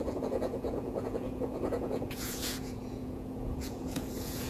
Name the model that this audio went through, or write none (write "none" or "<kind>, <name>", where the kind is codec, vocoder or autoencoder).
vocoder, Vocos